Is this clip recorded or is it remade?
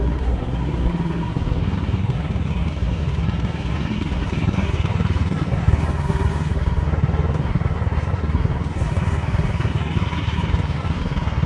remade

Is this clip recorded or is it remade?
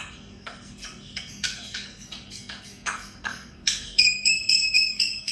remade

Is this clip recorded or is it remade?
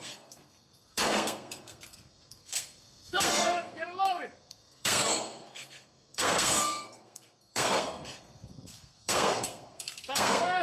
remade